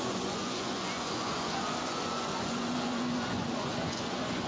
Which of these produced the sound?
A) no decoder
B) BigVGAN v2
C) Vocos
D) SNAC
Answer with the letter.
C